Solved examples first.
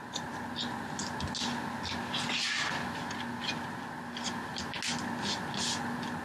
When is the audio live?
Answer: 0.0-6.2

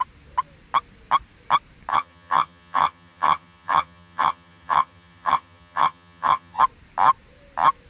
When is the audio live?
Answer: 0.0-1.9; 6.6-7.9

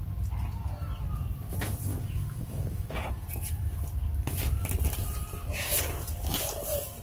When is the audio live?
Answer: 0.0-1.9; 3.1-7.0

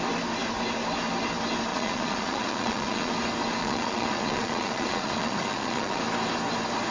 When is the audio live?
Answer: 0.0-1.7; 3.1-3.6; 6.0-6.9